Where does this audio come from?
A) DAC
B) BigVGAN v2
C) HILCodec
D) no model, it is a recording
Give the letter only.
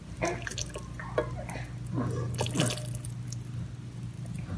D